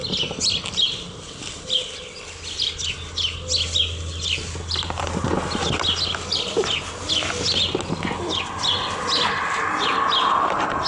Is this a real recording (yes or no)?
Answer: yes